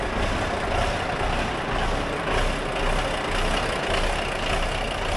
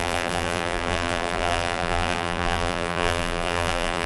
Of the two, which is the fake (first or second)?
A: second